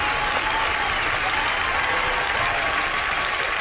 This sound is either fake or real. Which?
real